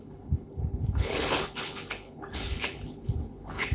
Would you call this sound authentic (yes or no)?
no